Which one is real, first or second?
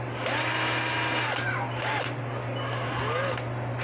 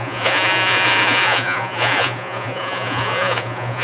first